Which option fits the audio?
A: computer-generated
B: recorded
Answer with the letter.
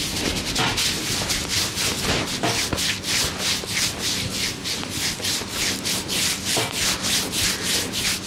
B